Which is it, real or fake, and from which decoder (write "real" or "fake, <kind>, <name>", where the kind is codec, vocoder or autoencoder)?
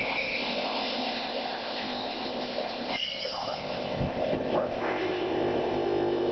fake, codec, ZipCodec